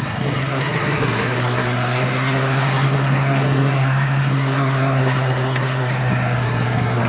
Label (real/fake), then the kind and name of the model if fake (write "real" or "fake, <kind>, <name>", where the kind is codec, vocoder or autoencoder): fake, codec, SNAC